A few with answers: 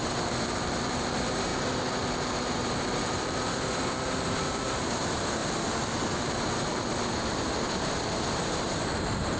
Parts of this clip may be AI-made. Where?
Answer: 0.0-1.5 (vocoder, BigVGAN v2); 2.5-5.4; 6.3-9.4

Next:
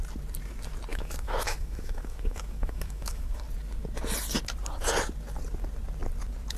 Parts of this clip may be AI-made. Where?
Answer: 0.9-3.4 (autoencoder, DAC-VAE)

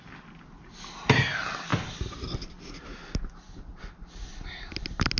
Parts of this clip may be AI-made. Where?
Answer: none